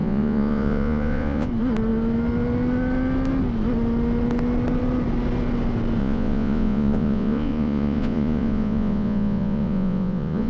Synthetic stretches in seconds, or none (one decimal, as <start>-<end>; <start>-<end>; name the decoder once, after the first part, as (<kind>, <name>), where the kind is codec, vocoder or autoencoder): 0.0-1.5 (vocoder, Vocos); 6.0-10.5